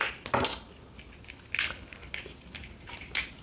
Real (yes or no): yes